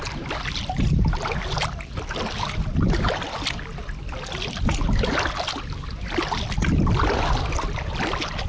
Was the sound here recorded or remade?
recorded